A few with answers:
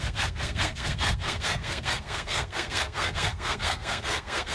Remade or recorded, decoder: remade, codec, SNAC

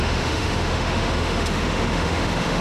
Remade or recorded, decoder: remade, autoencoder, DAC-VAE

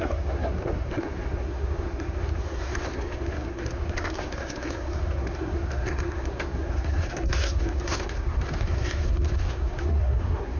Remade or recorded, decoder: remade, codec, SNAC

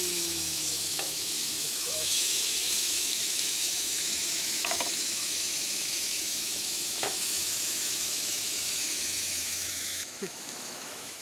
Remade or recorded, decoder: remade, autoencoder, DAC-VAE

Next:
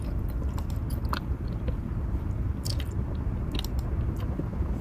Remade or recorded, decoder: recorded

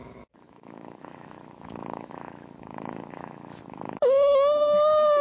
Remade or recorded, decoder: remade, autoencoder, DAC-VAE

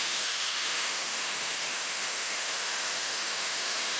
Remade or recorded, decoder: remade, autoencoder, DAC-VAE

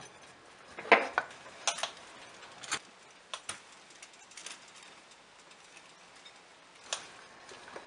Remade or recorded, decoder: recorded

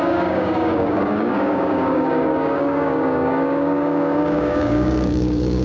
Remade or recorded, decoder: remade, codec, DAC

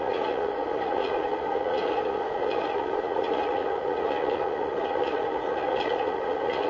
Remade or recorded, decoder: remade, vocoder, Vocos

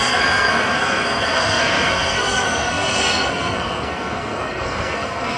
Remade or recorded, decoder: remade, codec, SNAC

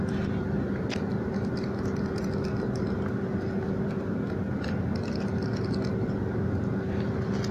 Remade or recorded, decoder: recorded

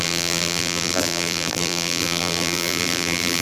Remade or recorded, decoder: remade, vocoder, BigVGAN v2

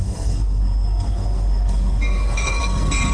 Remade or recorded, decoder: remade, codec, SNAC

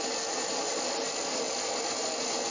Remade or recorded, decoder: recorded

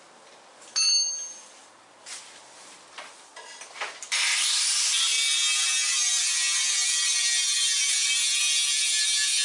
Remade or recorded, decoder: recorded